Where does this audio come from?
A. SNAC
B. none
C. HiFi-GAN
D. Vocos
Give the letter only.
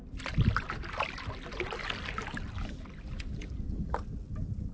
B